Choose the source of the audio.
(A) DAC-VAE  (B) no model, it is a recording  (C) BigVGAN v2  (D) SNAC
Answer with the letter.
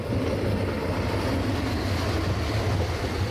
B